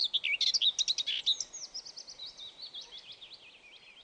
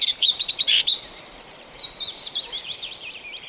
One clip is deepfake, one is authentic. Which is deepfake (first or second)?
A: second